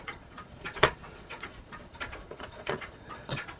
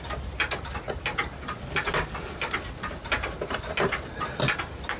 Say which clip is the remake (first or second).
first